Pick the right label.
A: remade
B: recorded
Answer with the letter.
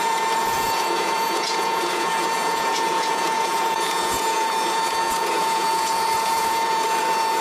A